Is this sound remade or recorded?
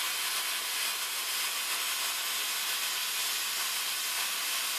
recorded